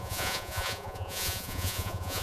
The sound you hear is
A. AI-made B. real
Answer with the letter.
A